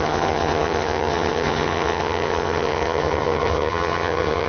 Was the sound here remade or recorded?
remade